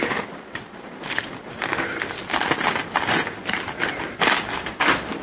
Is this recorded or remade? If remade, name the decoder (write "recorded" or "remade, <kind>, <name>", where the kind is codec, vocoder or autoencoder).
recorded